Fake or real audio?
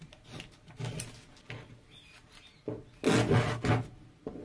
real